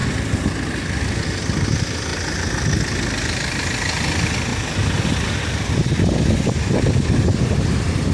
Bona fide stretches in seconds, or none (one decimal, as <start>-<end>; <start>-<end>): 0.0-8.1